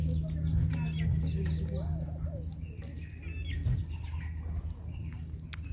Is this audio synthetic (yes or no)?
no